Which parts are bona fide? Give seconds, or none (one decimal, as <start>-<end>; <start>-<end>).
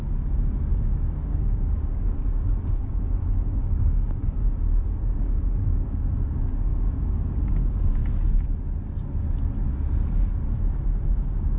0.0-0.7; 8.0-11.1